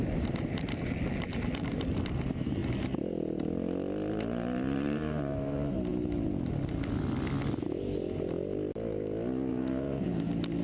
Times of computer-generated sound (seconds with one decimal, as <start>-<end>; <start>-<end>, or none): 0.0-2.6; 4.1-5.9; 9.5-10.6